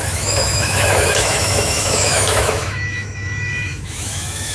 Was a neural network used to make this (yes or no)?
yes